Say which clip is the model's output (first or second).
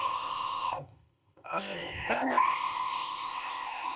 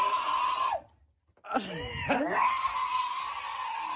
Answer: first